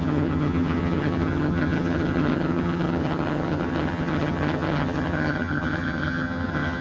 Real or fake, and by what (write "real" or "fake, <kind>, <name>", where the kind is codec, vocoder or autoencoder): fake, vocoder, HiFi-GAN